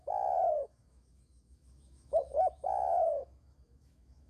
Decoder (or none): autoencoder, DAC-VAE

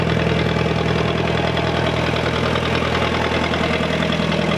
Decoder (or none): none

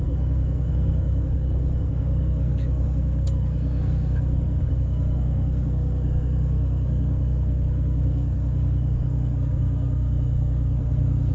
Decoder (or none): codec, SNAC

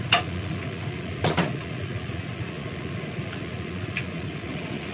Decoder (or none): vocoder, Vocos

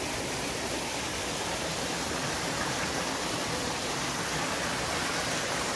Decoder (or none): none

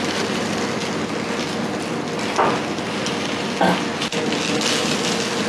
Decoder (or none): none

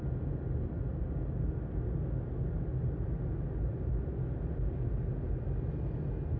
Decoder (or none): none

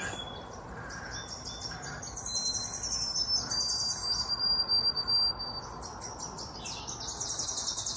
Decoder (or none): none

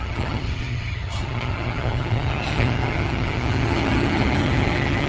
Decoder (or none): vocoder, HiFi-GAN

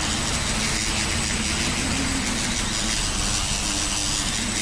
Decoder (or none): none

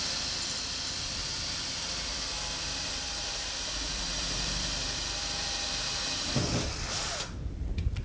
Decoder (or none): vocoder, BigVGAN v2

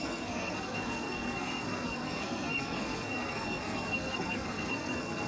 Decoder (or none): codec, SNAC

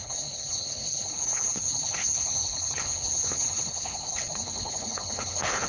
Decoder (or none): codec, HILCodec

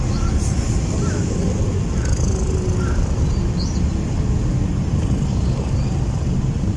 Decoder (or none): none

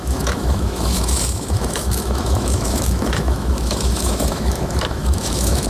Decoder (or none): autoencoder, DAC-VAE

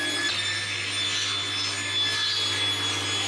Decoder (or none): none